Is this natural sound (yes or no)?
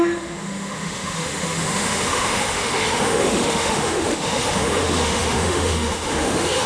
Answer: no